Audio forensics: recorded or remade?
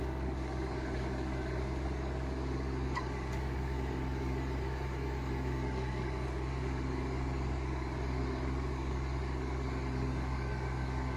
remade